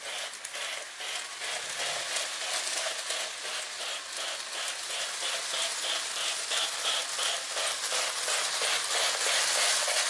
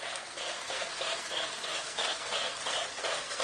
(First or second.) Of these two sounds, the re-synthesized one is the second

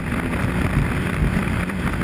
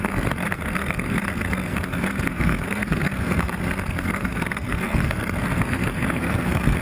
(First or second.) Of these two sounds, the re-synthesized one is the second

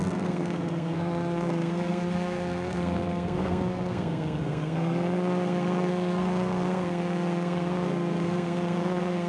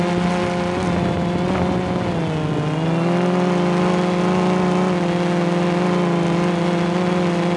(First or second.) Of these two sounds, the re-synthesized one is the first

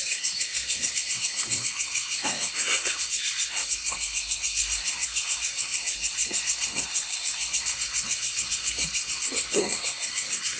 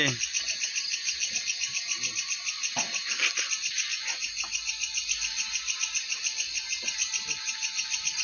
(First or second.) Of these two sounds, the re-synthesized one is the first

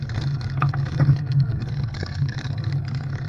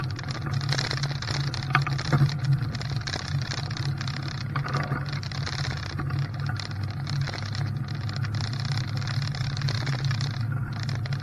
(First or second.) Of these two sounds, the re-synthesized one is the first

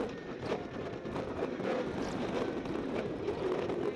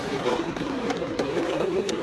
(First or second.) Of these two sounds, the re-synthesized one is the second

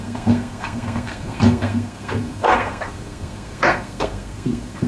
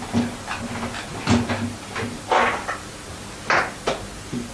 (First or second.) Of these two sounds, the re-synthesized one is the first